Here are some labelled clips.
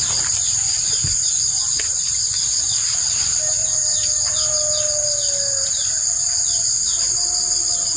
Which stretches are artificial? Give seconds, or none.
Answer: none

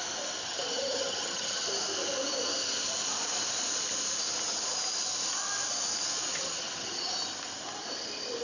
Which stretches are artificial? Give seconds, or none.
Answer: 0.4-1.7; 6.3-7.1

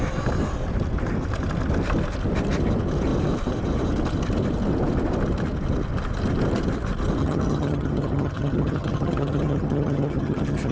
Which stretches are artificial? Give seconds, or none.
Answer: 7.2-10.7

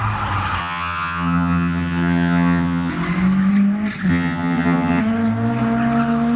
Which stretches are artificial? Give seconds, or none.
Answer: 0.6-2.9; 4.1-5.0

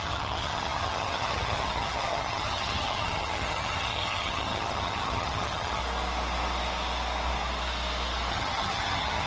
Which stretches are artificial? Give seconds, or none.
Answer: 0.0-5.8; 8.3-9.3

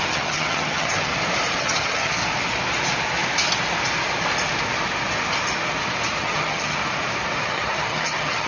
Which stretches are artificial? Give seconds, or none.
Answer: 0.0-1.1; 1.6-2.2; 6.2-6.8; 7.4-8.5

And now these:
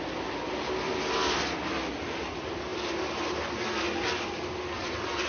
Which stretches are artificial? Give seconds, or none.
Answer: none

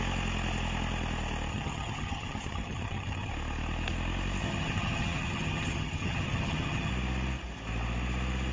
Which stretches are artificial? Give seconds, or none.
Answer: 1.5-3.3; 4.4-6.9